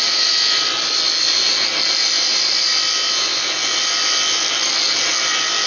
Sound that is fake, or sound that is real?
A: real